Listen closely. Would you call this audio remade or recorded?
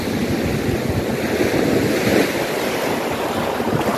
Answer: recorded